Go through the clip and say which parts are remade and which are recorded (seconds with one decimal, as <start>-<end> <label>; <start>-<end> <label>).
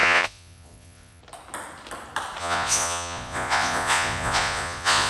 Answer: 0.0-1.2 remade; 1.2-2.4 recorded; 2.4-5.1 remade